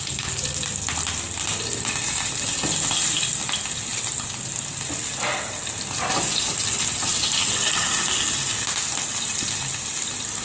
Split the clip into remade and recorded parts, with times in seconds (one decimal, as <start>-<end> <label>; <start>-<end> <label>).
0.0-10.4 recorded